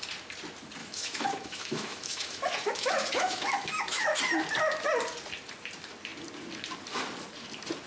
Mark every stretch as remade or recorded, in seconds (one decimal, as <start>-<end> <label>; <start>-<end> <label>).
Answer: 0.0-0.8 recorded; 0.8-4.2 remade; 4.2-7.9 recorded